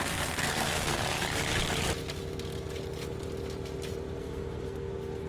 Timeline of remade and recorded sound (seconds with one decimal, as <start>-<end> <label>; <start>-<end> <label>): 0.0-1.0 remade; 1.0-4.2 recorded; 4.2-5.3 remade